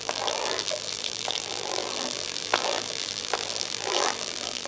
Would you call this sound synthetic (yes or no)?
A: yes